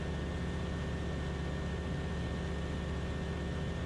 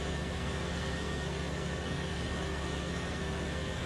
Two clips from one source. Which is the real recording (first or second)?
first